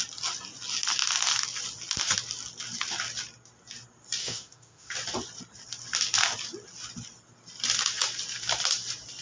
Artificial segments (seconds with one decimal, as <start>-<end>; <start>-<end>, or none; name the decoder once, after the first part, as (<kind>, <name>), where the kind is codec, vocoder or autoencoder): 4.2-4.9 (autoencoder, DAC-VAE)